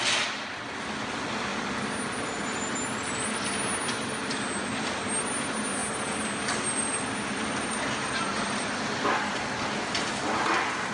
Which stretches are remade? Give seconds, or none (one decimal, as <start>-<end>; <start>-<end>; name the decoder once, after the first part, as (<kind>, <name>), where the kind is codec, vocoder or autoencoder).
none